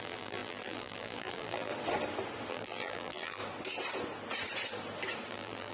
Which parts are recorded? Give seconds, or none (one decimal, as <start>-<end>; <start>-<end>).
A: 1.7-2.5; 3.4-5.3